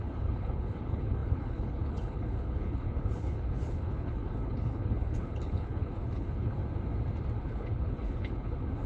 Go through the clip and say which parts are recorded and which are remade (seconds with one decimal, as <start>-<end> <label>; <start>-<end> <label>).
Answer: 0.0-6.6 remade; 6.6-7.4 recorded; 7.4-8.9 remade